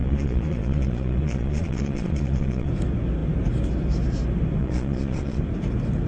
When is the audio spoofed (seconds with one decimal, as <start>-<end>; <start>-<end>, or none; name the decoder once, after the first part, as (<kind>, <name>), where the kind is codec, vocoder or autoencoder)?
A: 0.0-2.7 (vocoder, Vocos); 4.6-5.4